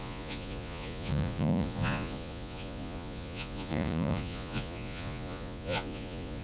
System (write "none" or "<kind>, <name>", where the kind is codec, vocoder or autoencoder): vocoder, Vocos